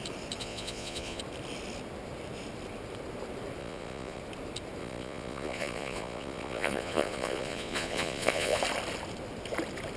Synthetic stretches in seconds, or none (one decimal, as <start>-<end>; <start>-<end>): 0.4-1.2; 3.6-4.2; 4.8-8.6